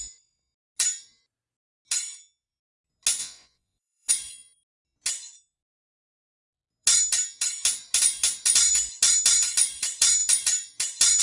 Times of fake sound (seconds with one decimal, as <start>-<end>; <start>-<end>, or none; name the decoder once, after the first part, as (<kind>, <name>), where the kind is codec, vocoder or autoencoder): 3.2-4.1 (vocoder, Vocos)